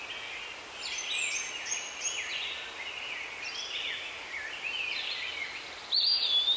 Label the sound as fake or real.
real